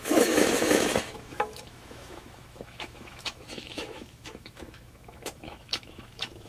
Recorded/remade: remade